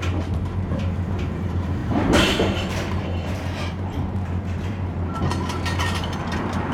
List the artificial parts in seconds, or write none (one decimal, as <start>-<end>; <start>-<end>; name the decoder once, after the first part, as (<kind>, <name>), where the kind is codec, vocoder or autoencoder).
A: 0.0-5.2 (vocoder, BigVGAN v2); 5.8-6.7